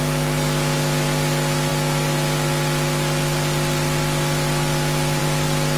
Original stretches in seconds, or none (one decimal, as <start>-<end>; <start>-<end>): 0.0-5.8